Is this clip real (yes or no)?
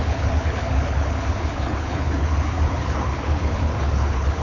no